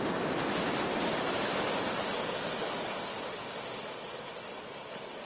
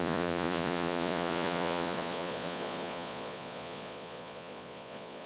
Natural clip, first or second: first